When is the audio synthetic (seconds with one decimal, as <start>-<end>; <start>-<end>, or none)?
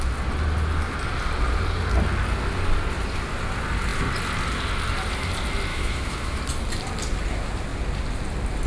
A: 5.7-6.4